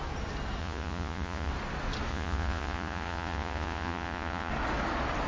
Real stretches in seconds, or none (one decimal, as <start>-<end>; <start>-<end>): 0.0-0.6; 1.5-2.1; 4.5-5.3